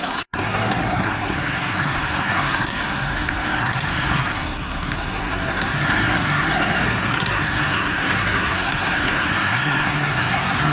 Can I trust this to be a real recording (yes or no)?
no